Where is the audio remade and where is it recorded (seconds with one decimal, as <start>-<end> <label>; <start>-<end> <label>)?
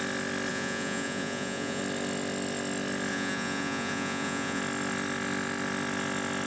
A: 0.0-0.5 recorded; 0.5-1.8 remade; 1.8-3.1 recorded; 3.1-4.6 remade; 4.6-6.5 recorded